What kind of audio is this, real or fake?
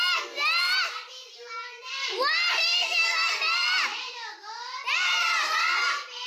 fake